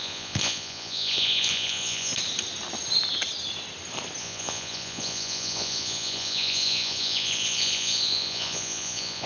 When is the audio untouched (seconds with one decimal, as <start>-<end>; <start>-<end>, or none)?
2.1-4.2